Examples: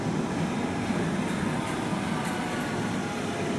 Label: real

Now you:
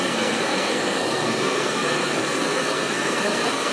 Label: fake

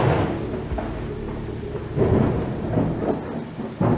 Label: real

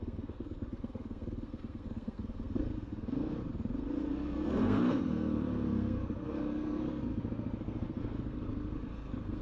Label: fake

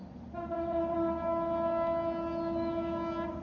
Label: real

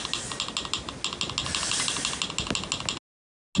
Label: real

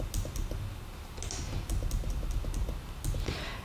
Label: real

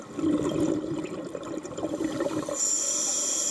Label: real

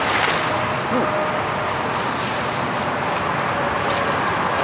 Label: real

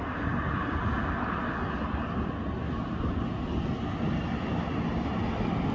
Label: real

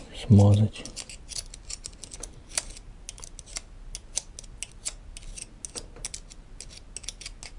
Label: real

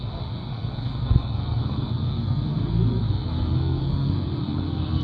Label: fake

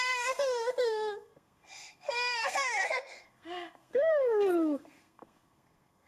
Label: fake